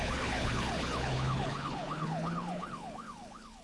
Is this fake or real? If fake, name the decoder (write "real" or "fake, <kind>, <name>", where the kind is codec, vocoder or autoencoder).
fake, codec, HILCodec